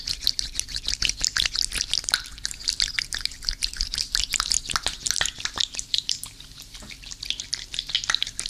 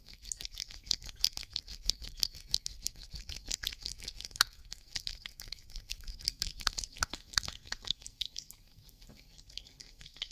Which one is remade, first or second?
second